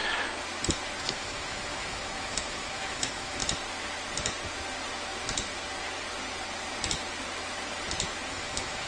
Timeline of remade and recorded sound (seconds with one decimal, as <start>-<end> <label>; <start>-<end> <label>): 0.0-1.0 recorded; 1.0-3.4 remade; 3.4-8.3 recorded; 8.3-8.9 remade